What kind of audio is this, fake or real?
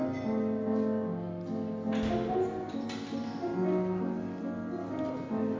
real